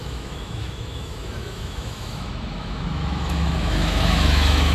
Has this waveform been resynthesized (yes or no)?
yes